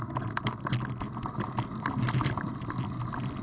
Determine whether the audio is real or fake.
real